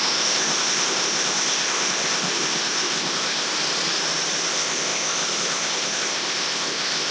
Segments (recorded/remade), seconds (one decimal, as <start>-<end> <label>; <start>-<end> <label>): 0.0-3.5 remade; 3.5-4.5 recorded; 4.5-7.1 remade